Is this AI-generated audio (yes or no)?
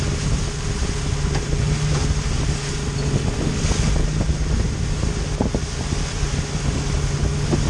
no